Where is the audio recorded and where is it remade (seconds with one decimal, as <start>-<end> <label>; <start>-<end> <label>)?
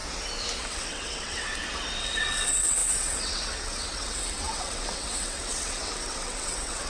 0.0-0.6 recorded; 0.6-1.5 remade; 1.5-2.0 recorded; 2.0-6.9 remade